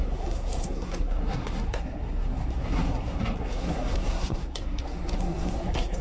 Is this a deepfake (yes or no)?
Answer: yes